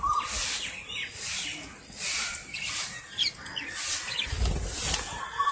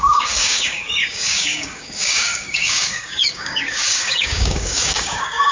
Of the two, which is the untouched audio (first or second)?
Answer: first